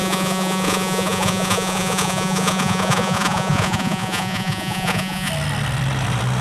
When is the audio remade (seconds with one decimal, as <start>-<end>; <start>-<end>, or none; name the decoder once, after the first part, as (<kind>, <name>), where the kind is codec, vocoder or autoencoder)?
0.0-5.3 (vocoder, Vocos)